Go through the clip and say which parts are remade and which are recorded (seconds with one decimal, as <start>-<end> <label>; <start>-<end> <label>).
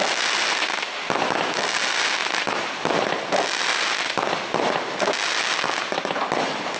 0.0-2.2 recorded; 2.2-3.0 remade; 3.0-6.8 recorded